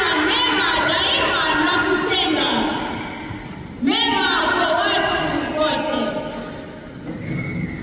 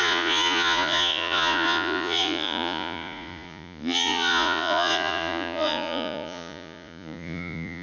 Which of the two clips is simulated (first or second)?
second